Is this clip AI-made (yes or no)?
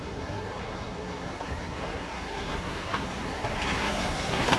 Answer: yes